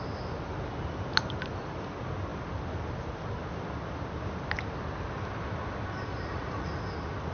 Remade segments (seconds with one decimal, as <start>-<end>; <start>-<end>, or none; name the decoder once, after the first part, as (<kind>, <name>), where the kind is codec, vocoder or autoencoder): 6.1-6.7 (vocoder, Vocos)